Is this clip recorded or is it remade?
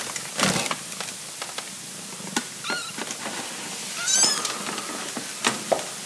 recorded